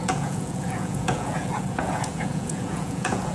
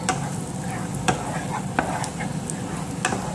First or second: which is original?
second